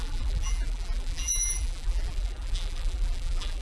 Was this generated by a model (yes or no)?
yes